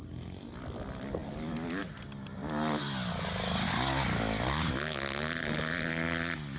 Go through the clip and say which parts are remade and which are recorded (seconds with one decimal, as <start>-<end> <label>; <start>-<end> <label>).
0.0-6.6 recorded